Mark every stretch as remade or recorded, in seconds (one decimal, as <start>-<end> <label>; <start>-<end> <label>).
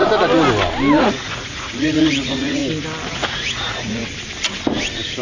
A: 0.0-1.0 recorded; 1.0-2.6 remade; 2.6-3.1 recorded; 3.1-4.0 remade; 4.0-5.2 recorded